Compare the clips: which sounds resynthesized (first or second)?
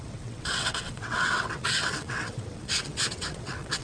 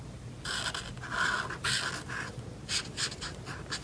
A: first